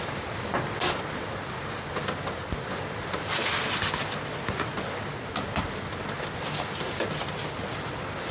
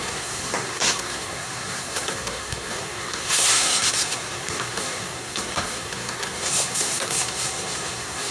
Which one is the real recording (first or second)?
first